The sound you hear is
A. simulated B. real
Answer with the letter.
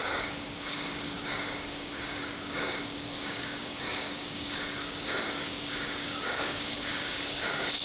A